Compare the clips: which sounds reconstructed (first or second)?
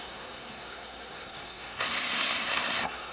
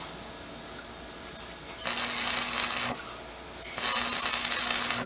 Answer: first